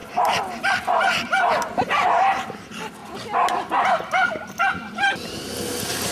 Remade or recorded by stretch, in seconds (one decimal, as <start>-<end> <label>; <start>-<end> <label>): 0.0-6.1 recorded